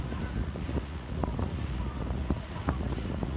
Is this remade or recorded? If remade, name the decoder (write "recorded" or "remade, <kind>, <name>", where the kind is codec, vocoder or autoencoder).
remade, vocoder, Vocos